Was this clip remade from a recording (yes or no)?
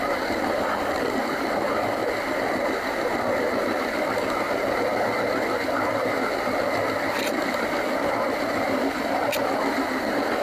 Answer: no